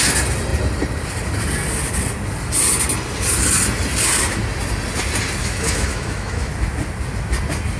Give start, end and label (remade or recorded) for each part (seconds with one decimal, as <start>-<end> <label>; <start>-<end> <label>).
0.0-5.4 recorded; 5.4-6.5 remade; 6.5-7.8 recorded